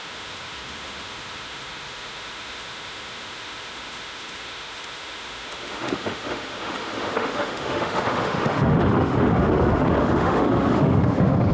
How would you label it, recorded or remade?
remade